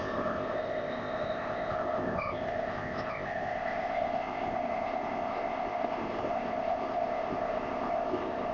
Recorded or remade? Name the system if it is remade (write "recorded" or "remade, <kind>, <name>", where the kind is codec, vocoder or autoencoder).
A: remade, codec, ZipCodec